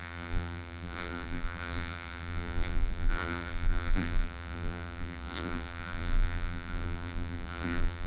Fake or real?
fake